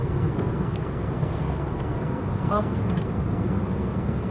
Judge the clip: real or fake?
fake